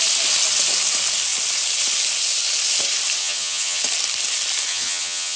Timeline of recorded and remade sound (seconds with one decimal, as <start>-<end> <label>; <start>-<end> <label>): 0.0-3.2 recorded; 3.2-3.8 remade; 3.8-4.7 recorded; 4.7-5.4 remade